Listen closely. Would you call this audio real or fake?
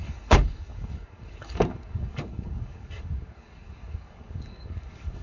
fake